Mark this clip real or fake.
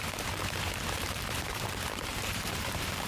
fake